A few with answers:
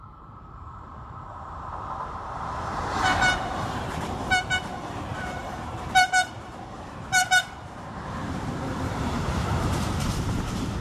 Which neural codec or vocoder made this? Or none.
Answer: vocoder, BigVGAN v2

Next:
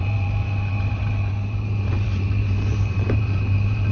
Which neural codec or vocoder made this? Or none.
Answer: vocoder, BigVGAN v2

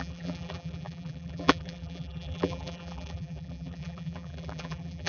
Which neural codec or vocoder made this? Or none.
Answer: vocoder, BigVGAN v2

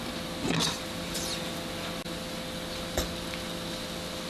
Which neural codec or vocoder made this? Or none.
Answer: none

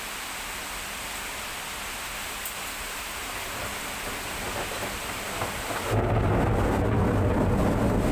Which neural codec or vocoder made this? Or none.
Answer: none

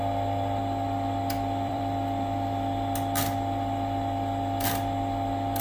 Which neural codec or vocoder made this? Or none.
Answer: vocoder, BigVGAN v2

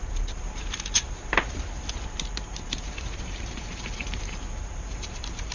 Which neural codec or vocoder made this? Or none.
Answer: vocoder, BigVGAN v2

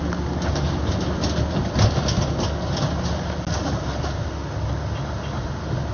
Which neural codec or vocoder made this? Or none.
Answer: none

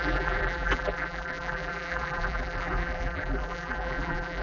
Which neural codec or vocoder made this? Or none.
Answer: vocoder, BigVGAN v2